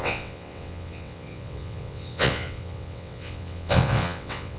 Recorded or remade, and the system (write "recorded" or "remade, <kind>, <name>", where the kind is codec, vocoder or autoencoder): remade, vocoder, WaveNeXt